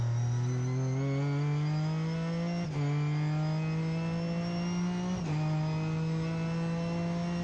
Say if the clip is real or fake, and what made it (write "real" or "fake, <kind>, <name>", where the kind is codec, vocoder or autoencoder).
real